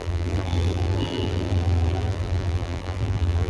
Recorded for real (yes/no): no